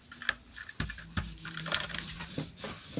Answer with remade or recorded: recorded